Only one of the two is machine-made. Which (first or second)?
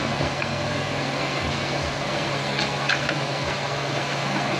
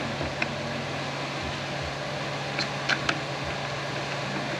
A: first